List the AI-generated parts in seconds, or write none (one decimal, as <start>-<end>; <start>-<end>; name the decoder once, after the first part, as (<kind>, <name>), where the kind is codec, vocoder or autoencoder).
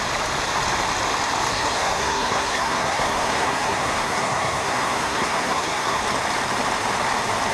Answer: 1.5-6.0 (codec, SNAC)